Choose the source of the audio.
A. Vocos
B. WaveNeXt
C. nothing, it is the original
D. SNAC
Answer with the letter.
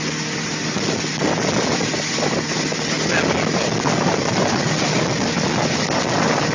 C